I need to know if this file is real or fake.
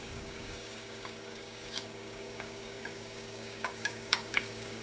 fake